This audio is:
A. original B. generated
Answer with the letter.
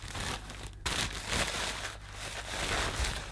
A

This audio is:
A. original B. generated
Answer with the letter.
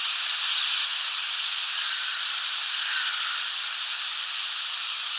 A